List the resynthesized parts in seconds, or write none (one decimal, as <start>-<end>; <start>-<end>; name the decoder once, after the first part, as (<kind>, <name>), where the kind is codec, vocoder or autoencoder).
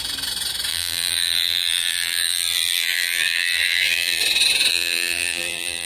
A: 0.7-4.2 (vocoder, BigVGAN v2); 4.7-5.9